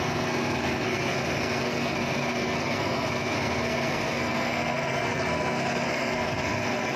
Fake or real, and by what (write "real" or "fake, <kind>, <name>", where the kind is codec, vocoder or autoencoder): fake, codec, SNAC